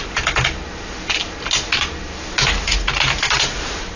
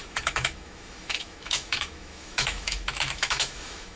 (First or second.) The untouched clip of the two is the first